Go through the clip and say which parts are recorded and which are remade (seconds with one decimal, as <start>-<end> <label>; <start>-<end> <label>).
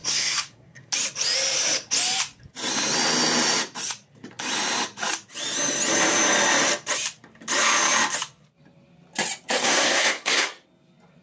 0.0-0.9 remade; 0.9-9.6 recorded; 9.6-10.5 remade; 10.5-11.2 recorded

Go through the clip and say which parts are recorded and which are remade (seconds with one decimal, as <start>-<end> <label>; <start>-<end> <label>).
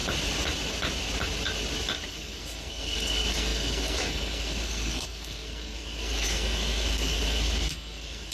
0.0-2.1 recorded; 2.1-8.3 remade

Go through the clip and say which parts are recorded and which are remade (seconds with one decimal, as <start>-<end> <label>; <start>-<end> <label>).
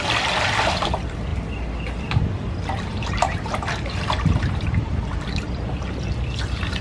0.0-2.9 recorded; 2.9-5.0 remade; 5.0-6.8 recorded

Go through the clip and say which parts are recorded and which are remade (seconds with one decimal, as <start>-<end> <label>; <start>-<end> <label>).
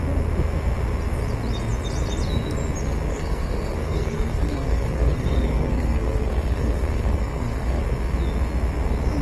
0.0-3.1 recorded; 3.1-7.8 remade; 7.8-9.2 recorded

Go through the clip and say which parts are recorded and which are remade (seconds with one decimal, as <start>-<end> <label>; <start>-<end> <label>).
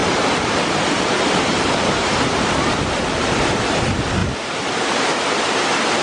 0.0-3.6 remade; 3.6-4.2 recorded; 4.2-5.4 remade; 5.4-6.0 recorded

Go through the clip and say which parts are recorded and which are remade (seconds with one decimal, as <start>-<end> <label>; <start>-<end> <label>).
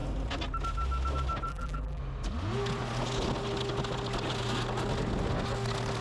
0.0-1.5 recorded; 1.5-2.0 remade; 2.0-6.0 recorded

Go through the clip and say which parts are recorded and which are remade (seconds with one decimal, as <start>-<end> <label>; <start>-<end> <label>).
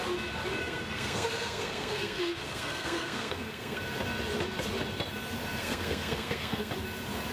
0.0-0.6 recorded; 0.6-3.8 remade; 3.8-5.6 recorded; 5.6-6.7 remade; 6.7-7.3 recorded